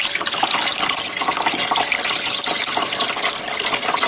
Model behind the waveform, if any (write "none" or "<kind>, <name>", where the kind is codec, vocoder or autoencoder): none